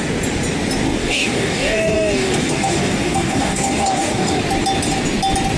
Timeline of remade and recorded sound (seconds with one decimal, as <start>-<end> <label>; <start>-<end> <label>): 0.0-1.0 recorded; 1.0-4.4 remade; 4.4-5.6 recorded